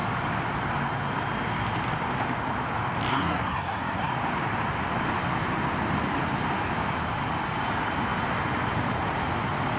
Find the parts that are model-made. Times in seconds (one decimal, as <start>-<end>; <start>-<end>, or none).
3.1-4.1